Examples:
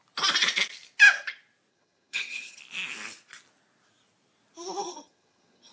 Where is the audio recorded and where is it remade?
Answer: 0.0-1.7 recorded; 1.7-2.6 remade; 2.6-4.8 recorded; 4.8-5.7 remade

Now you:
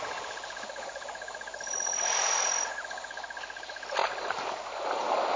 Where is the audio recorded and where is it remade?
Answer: 0.0-4.0 recorded; 4.0-5.4 remade

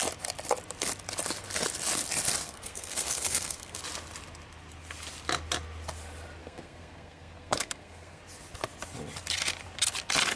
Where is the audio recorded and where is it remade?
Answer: 0.0-2.4 recorded; 2.4-3.8 remade; 3.8-6.4 recorded; 6.4-8.2 remade; 8.2-10.4 recorded

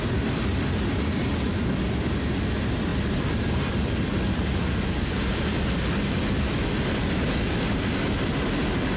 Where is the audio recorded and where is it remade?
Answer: 0.0-9.0 recorded

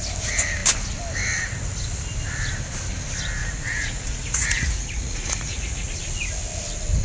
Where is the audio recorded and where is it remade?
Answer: 0.0-3.4 recorded; 3.4-5.9 remade; 5.9-7.0 recorded

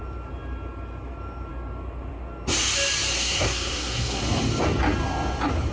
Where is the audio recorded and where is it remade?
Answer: 0.0-3.1 recorded; 3.1-4.2 remade; 4.2-5.7 recorded